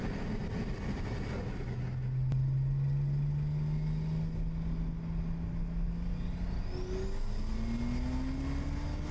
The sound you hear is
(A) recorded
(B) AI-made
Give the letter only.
A